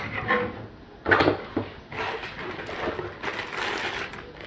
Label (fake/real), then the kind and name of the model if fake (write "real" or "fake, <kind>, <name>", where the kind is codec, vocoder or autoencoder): real